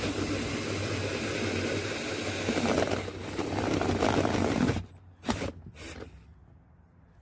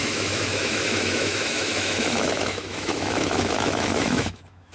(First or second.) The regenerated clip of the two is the second